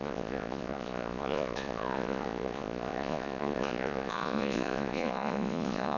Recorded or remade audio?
remade